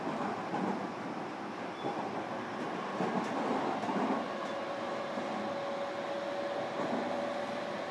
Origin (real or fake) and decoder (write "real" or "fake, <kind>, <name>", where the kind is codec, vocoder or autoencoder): real